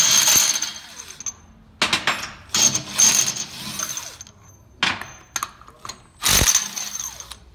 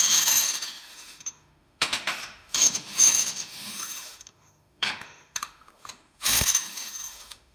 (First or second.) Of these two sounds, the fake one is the second